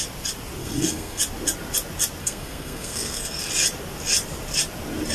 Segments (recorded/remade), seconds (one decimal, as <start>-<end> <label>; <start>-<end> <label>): 0.0-0.6 recorded; 0.6-1.2 remade; 1.2-2.2 recorded; 2.2-3.4 remade; 3.4-5.1 recorded